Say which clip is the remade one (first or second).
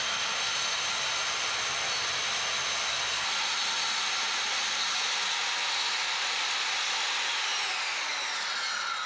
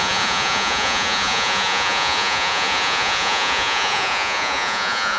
second